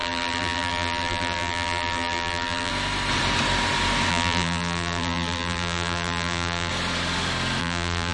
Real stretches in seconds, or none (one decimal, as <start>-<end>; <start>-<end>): 2.7-4.1; 6.7-7.6